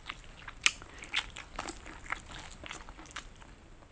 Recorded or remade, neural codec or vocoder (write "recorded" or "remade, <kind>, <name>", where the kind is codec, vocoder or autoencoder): recorded